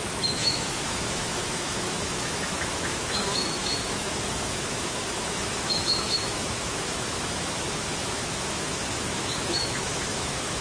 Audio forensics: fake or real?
fake